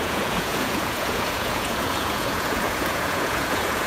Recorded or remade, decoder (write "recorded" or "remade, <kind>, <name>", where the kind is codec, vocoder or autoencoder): remade, vocoder, Vocos